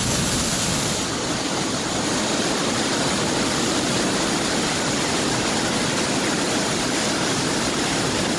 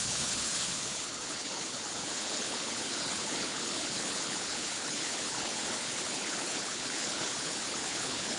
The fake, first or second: second